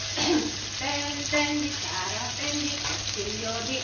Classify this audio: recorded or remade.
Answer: recorded